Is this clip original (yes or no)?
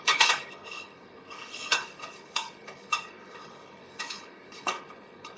no